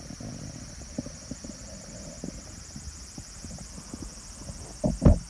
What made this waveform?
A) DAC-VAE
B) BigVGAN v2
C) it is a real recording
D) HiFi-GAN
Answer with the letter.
C